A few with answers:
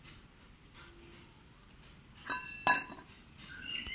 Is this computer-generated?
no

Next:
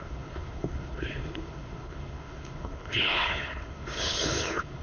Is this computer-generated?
yes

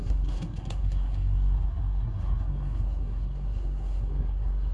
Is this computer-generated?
yes